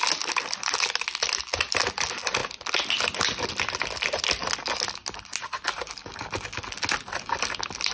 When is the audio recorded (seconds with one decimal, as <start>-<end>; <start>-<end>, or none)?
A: 0.0-7.9